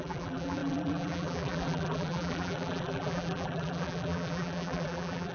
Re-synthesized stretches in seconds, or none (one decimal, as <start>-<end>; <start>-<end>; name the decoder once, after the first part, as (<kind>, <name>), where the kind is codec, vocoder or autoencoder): 0.0-5.3 (vocoder, BigVGAN v2)